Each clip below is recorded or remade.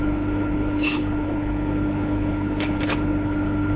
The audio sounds remade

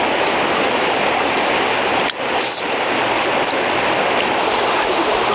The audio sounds recorded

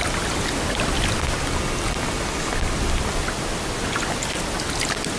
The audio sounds recorded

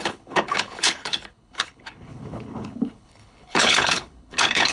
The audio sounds remade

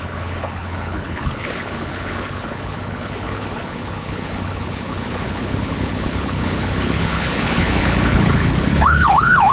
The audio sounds remade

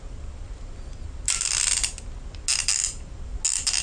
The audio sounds recorded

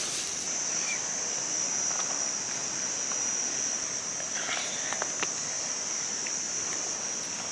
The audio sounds recorded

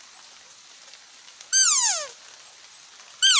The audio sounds recorded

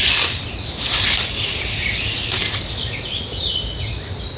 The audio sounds recorded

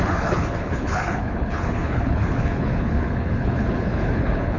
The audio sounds remade